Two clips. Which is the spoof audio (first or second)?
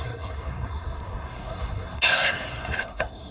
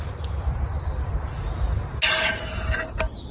first